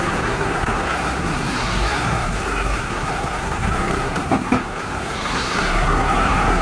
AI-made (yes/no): yes